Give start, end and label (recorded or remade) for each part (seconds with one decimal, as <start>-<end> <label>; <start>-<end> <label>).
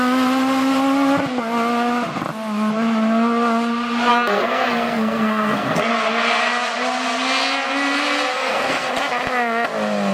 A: 0.0-4.1 recorded; 4.1-5.9 remade; 5.9-8.3 recorded; 8.3-8.9 remade; 8.9-10.1 recorded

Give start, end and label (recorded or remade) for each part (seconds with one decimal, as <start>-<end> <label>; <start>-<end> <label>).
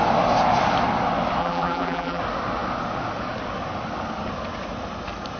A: 0.0-1.4 recorded; 1.4-2.2 remade; 2.2-5.4 recorded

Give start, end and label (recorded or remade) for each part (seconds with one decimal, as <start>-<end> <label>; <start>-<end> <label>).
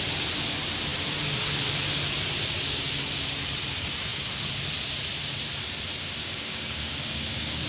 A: 0.0-6.2 recorded; 6.2-7.7 remade